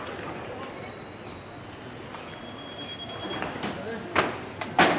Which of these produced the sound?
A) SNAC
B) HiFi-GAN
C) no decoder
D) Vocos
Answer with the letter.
C